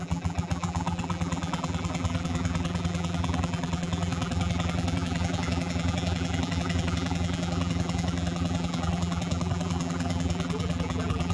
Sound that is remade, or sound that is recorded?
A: remade